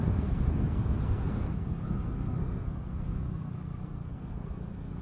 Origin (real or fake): fake